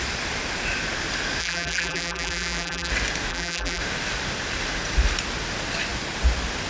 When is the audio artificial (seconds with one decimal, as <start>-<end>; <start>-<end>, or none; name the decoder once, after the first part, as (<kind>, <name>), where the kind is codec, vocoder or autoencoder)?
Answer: 1.4-2.9 (vocoder, BigVGAN v2); 3.3-3.8